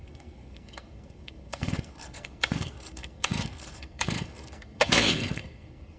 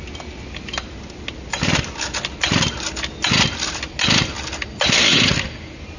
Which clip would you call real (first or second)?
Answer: second